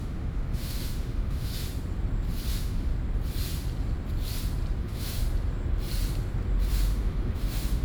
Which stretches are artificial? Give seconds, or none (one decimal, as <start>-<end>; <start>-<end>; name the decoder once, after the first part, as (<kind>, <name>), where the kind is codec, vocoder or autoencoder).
0.0-1.5 (autoencoder, DAC-VAE); 2.5-2.9; 4.8-5.2; 6.7-7.8